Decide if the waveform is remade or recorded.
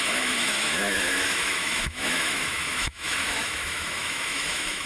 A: remade